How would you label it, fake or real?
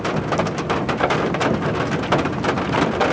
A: real